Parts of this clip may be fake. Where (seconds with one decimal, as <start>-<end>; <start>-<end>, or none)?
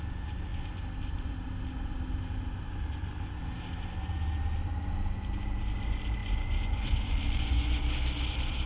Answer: 6.2-7.8